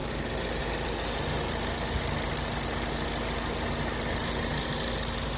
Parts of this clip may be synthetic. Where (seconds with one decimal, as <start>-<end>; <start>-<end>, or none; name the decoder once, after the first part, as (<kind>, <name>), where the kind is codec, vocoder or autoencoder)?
none